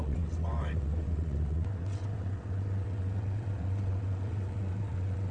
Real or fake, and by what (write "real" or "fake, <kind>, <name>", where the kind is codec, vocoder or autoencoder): fake, vocoder, WaveNeXt